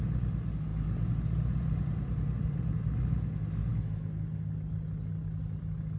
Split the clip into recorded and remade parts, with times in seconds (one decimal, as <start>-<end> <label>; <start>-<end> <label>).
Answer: 0.0-0.7 recorded; 0.7-3.0 remade; 3.0-6.0 recorded